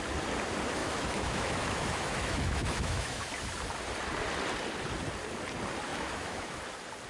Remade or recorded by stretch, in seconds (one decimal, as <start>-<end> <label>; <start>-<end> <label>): 0.0-0.8 recorded; 0.8-3.3 remade; 3.3-5.9 recorded; 5.9-6.6 remade; 6.6-7.1 recorded